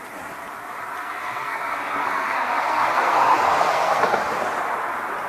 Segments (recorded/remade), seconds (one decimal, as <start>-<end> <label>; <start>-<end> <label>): 0.0-1.0 recorded; 1.0-4.2 remade; 4.2-5.3 recorded